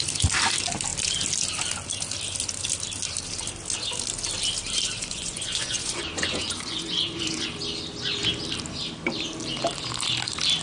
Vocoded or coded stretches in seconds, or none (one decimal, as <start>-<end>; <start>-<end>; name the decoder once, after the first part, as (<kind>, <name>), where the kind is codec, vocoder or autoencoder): 5.0-7.6 (vocoder, Vocos)